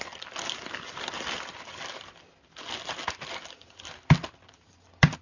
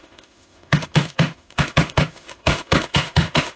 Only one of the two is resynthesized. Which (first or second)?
second